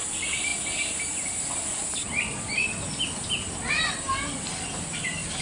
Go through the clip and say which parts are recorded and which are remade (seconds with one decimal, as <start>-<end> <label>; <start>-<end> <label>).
0.0-5.4 recorded